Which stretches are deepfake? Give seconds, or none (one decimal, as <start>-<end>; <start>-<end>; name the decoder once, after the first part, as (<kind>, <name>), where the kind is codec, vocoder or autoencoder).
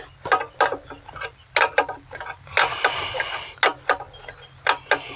none